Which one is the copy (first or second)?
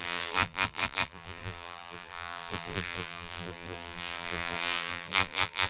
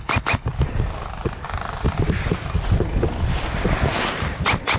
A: first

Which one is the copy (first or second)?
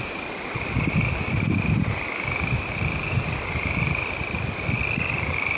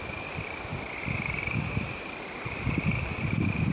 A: second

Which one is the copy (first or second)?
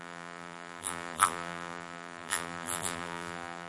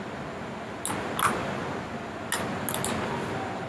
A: first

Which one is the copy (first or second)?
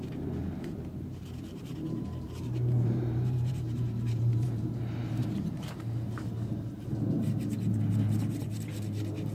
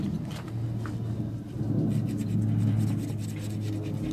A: first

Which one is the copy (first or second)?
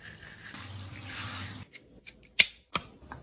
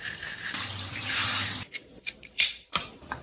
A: second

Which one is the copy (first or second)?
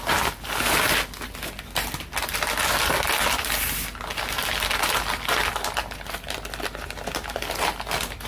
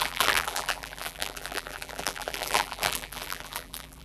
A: second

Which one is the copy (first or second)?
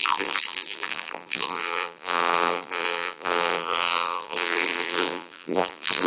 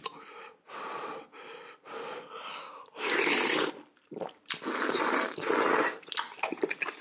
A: first